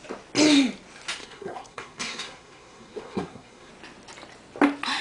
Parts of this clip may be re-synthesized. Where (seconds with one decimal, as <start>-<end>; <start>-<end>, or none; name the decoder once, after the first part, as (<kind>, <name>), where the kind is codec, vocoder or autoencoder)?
1.2-3.7 (codec, SNAC)